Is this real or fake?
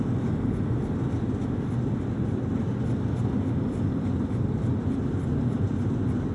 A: real